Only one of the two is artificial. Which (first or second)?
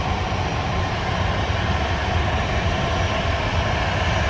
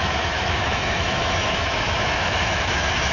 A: second